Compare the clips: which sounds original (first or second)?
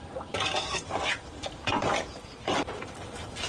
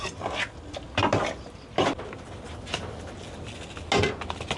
second